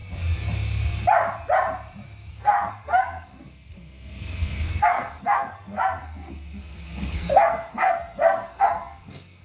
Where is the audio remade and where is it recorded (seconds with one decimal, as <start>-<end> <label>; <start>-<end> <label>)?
0.0-2.3 recorded; 2.3-9.4 remade